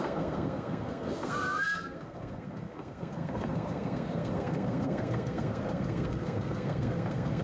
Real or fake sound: fake